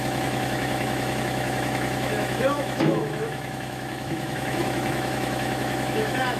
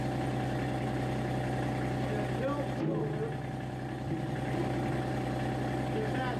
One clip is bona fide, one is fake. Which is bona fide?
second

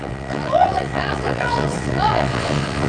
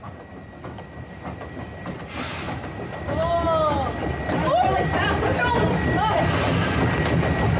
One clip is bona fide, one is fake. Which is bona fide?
second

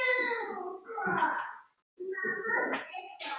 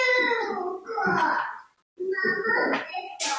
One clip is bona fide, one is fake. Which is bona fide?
second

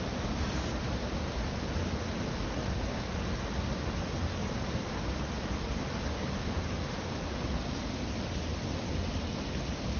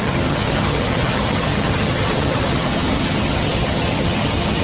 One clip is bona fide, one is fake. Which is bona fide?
first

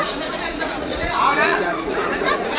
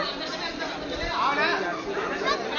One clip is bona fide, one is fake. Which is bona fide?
second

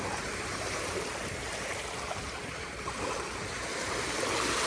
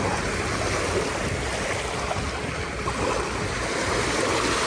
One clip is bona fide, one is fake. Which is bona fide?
second